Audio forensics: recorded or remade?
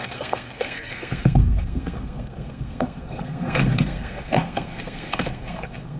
remade